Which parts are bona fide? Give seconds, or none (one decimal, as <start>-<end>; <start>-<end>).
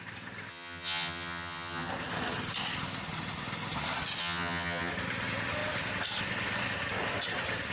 0.0-0.5; 1.9-4.2; 4.9-7.7